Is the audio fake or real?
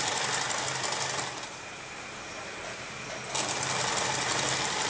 real